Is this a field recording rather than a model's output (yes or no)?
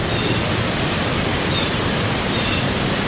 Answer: yes